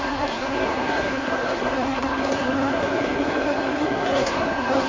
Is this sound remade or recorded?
remade